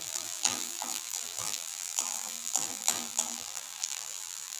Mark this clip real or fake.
fake